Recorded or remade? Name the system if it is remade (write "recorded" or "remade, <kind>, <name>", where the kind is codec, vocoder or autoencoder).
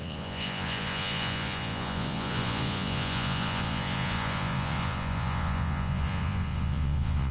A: remade, vocoder, Vocos